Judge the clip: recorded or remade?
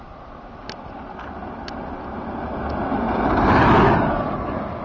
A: recorded